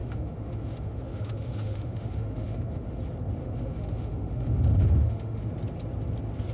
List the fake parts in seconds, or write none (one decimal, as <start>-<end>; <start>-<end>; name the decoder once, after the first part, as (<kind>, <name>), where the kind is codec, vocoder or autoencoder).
0.0-3.0 (autoencoder, DAC-VAE); 3.4-5.5